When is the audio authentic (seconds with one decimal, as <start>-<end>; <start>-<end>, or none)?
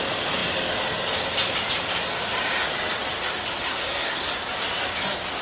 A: 0.0-3.6; 4.3-5.4